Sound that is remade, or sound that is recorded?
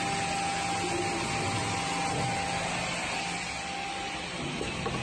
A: recorded